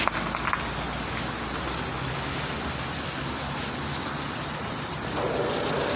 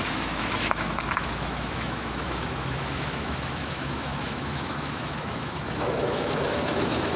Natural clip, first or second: first